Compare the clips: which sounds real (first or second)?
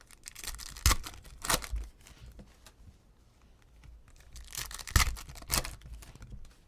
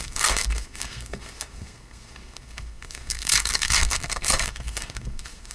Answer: first